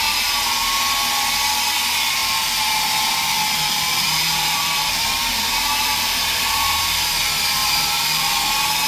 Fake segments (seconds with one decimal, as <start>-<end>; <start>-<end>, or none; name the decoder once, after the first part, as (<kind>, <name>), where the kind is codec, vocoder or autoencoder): 2.2-7.1 (vocoder, BigVGAN v2); 7.6-8.3